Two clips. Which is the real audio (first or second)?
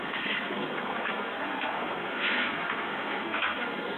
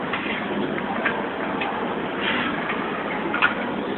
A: second